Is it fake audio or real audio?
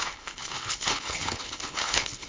fake